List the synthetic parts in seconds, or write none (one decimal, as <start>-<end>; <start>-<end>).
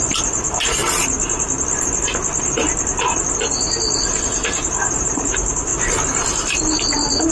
0.0-0.8; 4.2-5.7